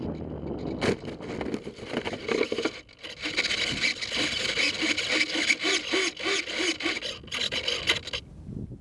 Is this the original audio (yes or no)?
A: yes